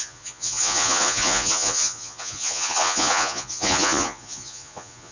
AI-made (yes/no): yes